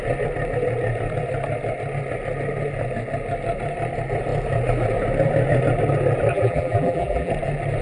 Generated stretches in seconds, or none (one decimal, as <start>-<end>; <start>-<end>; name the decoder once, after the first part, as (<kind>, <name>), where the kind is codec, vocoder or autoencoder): 6.3-7.3 (vocoder, BigVGAN v2)